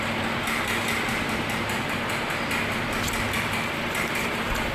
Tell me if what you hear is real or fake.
real